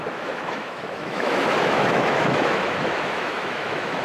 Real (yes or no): no